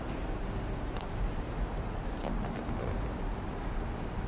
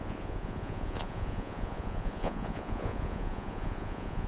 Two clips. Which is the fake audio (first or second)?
second